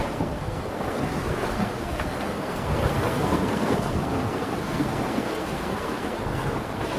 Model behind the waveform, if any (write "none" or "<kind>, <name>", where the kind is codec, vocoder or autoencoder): codec, SNAC